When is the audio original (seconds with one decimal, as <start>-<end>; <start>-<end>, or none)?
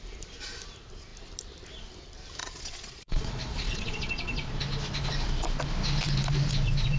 0.0-2.4; 4.5-7.0